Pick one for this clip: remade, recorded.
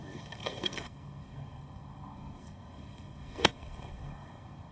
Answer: remade